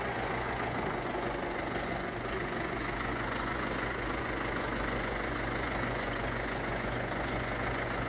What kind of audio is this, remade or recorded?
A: remade